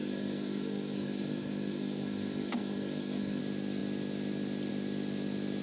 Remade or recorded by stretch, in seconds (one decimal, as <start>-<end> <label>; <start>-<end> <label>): 0.0-3.4 remade; 3.4-5.6 recorded